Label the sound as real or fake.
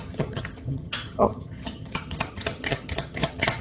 fake